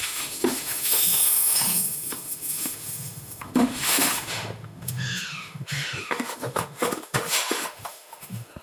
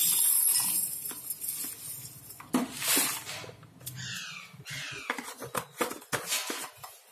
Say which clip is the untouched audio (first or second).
second